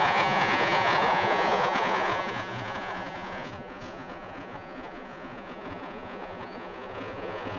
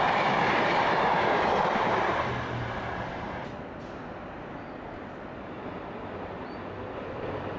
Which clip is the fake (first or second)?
first